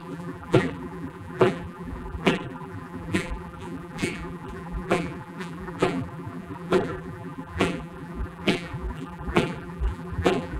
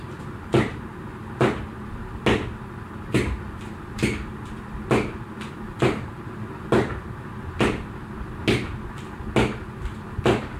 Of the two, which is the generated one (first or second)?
first